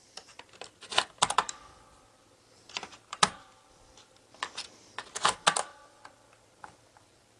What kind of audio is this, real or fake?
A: fake